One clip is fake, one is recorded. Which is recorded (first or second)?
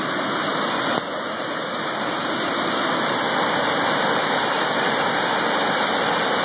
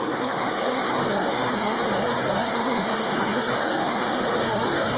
first